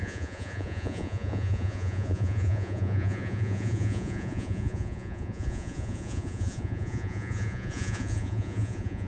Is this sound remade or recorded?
remade